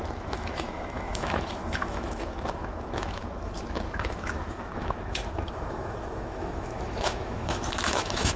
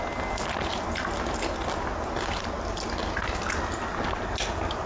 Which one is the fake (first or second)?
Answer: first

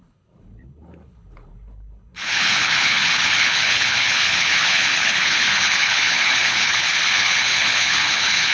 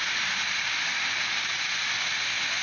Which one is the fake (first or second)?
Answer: first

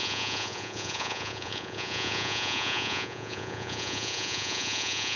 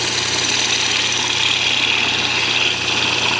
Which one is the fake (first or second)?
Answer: first